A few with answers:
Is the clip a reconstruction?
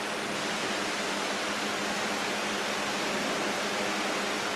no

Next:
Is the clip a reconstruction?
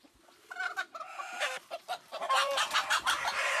yes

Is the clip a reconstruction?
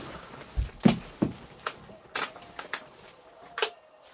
no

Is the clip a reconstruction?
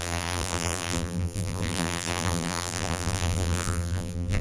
yes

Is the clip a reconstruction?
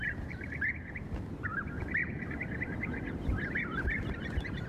yes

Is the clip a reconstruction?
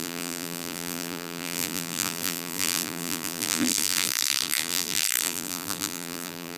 yes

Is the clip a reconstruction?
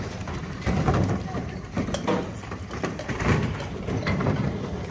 yes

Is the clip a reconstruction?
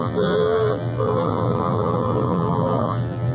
yes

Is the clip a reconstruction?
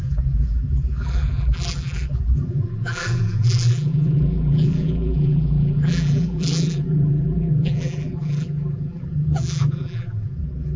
yes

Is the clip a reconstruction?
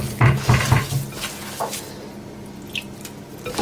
no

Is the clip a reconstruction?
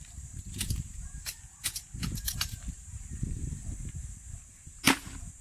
yes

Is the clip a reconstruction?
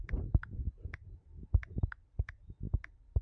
yes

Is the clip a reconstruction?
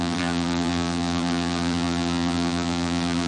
yes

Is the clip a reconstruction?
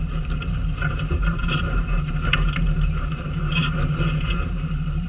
yes